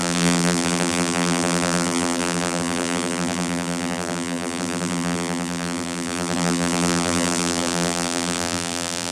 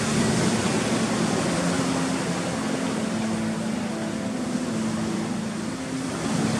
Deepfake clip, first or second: first